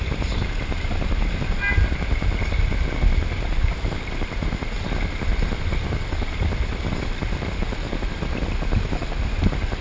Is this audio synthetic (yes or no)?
no